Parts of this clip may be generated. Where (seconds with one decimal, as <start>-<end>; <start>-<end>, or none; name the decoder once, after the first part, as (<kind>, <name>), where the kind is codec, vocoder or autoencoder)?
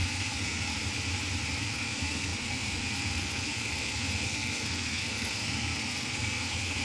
0.0-0.7 (codec, SNAC); 1.6-6.8